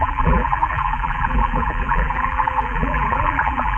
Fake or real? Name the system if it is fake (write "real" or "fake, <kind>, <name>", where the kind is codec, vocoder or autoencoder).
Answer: fake, vocoder, BigVGAN v2